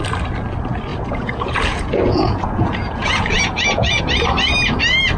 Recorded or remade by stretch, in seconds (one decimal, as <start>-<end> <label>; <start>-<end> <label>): 0.0-0.9 recorded; 0.9-4.0 remade; 4.0-5.2 recorded

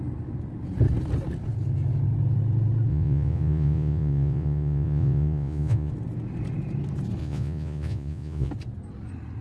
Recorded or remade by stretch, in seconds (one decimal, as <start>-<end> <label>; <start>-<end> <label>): 0.0-2.9 recorded; 2.9-5.9 remade; 5.9-7.2 recorded; 7.2-8.5 remade; 8.5-9.4 recorded

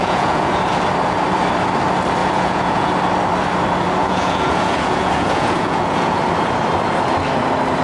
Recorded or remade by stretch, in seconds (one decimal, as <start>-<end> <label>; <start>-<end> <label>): 0.0-0.5 remade; 0.5-2.2 recorded; 2.2-2.9 remade; 2.9-4.0 recorded; 4.0-6.2 remade; 6.2-7.8 recorded

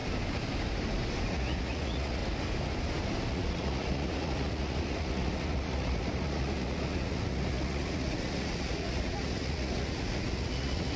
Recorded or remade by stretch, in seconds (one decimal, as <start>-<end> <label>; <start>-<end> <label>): 0.0-1.3 recorded; 1.3-2.2 remade; 2.2-3.3 recorded; 3.3-11.0 remade

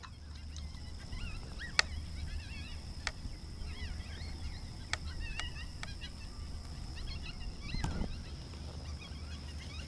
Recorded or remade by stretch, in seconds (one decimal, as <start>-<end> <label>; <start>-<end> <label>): 0.0-9.9 recorded

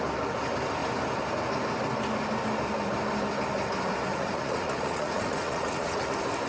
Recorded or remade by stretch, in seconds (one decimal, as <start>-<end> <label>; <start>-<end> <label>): 0.0-4.1 recorded; 4.1-6.0 remade; 6.0-6.5 recorded

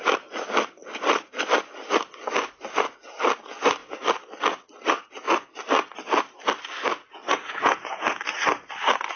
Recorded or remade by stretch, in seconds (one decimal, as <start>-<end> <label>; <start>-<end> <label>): 0.0-7.1 recorded; 7.1-8.2 remade; 8.2-9.2 recorded